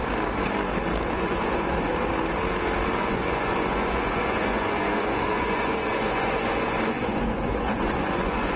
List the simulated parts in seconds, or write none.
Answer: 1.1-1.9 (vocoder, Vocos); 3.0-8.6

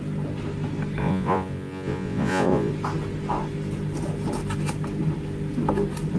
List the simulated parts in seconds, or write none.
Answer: 1.0-2.7 (vocoder, Vocos)

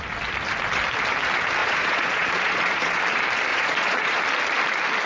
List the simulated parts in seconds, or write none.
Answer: 1.6-3.0 (vocoder, Vocos); 3.5-4.2

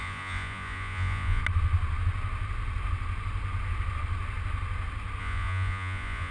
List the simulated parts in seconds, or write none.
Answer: 0.0-1.4 (vocoder, Vocos); 5.2-6.3

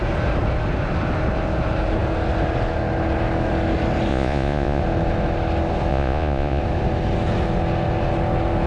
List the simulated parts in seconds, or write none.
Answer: 4.1-4.8 (vocoder, Vocos); 5.9-6.6